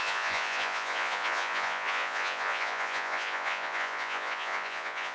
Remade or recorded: remade